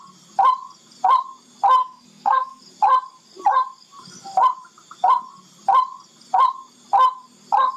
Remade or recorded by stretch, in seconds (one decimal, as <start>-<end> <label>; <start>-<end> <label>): 0.0-1.8 recorded; 1.8-2.6 remade; 2.6-7.8 recorded

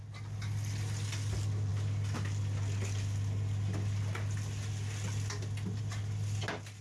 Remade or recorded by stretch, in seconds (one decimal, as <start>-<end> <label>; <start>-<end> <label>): 0.0-6.8 recorded